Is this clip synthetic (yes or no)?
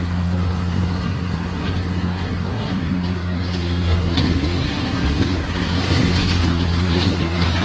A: yes